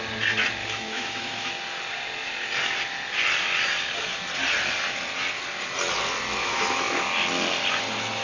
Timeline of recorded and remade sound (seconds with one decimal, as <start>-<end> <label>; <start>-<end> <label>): 0.0-0.6 recorded; 0.6-1.5 remade; 1.5-6.4 recorded; 6.4-7.0 remade; 7.0-8.2 recorded